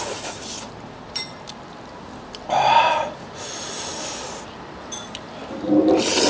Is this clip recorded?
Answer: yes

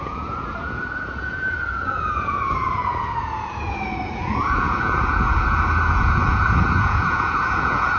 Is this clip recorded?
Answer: no